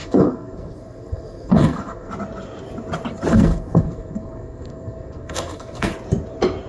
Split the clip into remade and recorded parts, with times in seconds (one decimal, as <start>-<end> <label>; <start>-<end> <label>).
0.0-2.1 remade; 2.1-3.3 recorded; 3.3-5.9 remade; 5.9-6.7 recorded